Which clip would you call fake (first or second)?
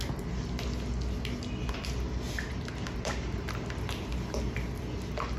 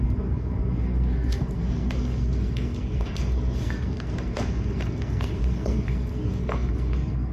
second